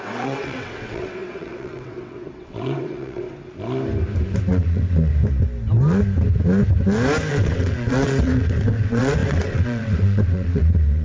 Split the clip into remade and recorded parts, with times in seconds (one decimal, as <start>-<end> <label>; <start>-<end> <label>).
0.0-3.2 remade; 3.2-4.5 recorded; 4.5-5.1 remade; 5.1-7.3 recorded; 7.3-11.0 remade